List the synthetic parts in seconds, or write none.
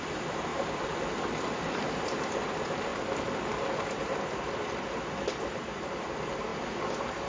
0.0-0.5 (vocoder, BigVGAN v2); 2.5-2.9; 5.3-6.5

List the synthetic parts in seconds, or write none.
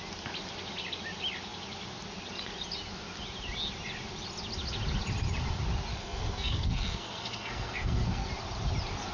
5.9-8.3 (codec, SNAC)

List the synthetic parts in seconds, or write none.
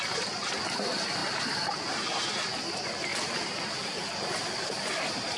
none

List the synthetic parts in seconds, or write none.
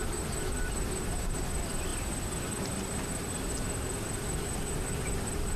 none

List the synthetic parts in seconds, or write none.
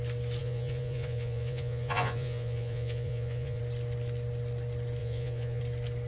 0.4-3.6 (vocoder, Vocos); 5.0-5.6